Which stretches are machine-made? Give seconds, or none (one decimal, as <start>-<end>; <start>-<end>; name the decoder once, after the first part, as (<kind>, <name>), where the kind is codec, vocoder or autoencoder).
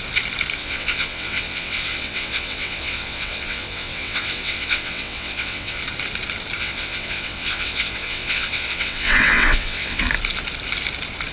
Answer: 0.6-5.8 (vocoder, WaveNeXt); 6.6-10.0